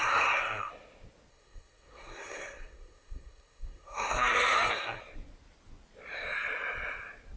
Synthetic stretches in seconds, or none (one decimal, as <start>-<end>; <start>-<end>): 0.0-0.7; 1.3-5.0